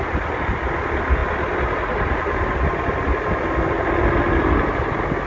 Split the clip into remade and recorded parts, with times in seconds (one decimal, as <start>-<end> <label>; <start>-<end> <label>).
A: 0.0-5.3 recorded